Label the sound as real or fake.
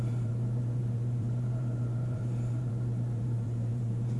fake